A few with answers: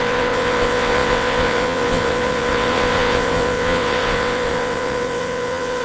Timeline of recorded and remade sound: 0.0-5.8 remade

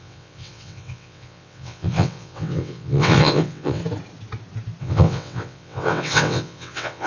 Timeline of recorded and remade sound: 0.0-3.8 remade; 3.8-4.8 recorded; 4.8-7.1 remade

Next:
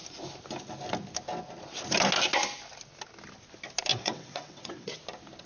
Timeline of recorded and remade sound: 0.0-3.9 recorded; 3.9-5.0 remade; 5.0-5.5 recorded

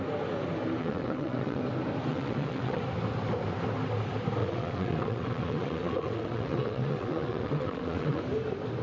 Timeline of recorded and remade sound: 0.0-0.8 recorded; 0.8-1.6 remade; 1.6-2.1 recorded; 2.1-2.8 remade; 2.8-4.4 recorded; 4.4-8.2 remade; 8.2-8.8 recorded